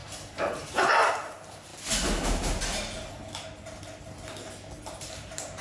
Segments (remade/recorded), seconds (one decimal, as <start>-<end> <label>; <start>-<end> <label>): 0.0-1.7 remade; 1.7-4.8 recorded; 4.8-5.6 remade